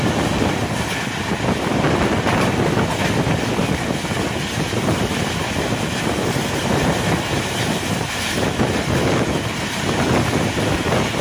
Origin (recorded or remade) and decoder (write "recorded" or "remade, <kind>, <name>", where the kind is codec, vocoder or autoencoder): recorded